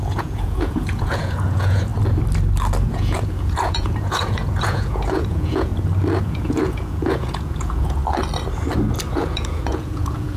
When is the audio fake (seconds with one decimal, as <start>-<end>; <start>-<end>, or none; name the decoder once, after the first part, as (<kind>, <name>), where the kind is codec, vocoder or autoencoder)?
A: 0.0-1.9 (vocoder, Vocos); 2.9-5.7; 6.2-8.0; 9.1-10.4